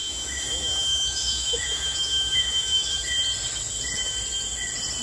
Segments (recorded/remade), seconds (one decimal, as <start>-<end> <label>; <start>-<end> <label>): 0.0-3.0 remade; 3.0-5.0 recorded